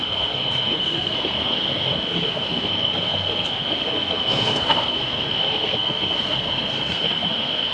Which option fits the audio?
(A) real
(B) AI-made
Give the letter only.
B